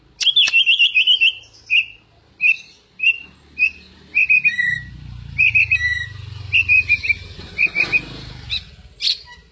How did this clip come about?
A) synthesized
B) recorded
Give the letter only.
B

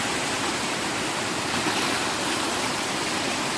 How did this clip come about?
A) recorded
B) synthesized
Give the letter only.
B